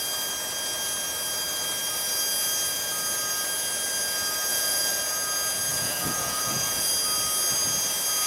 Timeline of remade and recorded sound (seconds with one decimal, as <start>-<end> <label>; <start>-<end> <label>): 0.0-4.5 recorded; 4.5-5.0 remade; 5.0-5.7 recorded; 5.7-6.9 remade; 6.9-8.3 recorded

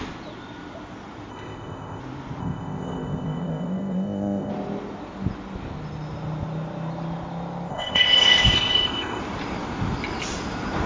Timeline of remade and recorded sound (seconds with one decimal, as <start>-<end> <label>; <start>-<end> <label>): 0.0-1.3 recorded; 1.3-2.0 remade; 2.0-2.4 recorded; 2.4-4.5 remade; 4.5-7.7 recorded; 7.7-9.2 remade; 9.2-10.9 recorded

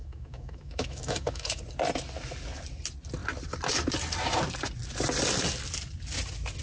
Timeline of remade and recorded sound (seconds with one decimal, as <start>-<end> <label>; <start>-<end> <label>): 0.0-1.6 remade; 1.6-6.6 recorded